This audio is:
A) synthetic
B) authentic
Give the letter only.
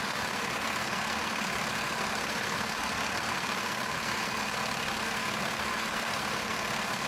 A